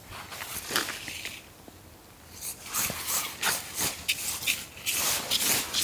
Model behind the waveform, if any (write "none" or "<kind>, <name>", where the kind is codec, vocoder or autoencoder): none